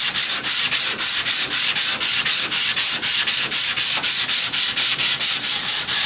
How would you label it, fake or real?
real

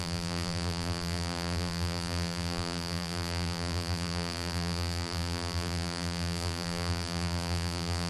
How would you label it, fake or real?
fake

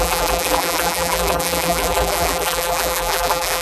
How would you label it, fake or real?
fake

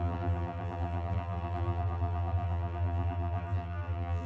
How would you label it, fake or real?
fake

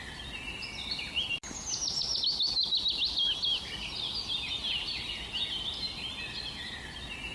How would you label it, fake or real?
real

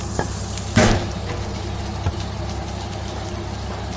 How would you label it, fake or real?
real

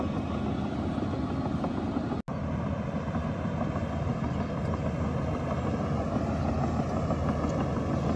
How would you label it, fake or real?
real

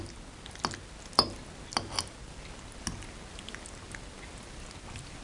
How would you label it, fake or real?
real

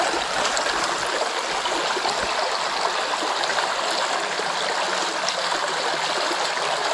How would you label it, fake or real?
real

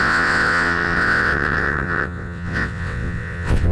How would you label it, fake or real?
fake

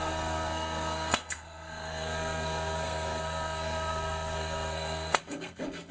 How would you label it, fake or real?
fake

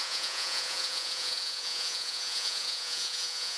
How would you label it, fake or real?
fake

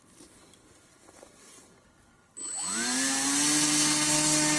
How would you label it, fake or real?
real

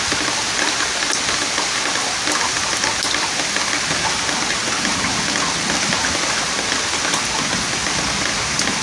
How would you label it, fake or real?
real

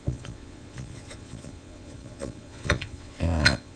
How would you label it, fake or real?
fake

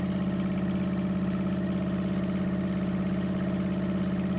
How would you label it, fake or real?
real